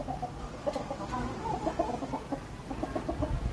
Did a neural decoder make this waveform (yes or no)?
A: no